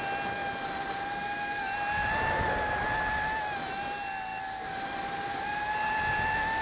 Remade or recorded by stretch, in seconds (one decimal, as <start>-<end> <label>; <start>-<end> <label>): 0.0-6.6 recorded